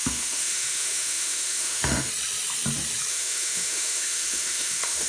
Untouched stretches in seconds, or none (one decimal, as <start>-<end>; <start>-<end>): 2.1-3.1